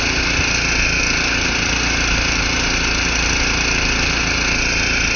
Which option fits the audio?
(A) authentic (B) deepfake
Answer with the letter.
A